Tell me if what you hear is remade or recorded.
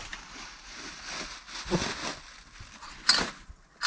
recorded